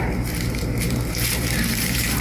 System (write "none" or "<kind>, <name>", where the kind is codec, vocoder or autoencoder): vocoder, BigVGAN v2